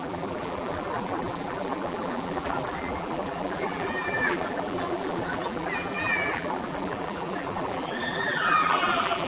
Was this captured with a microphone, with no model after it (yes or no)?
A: no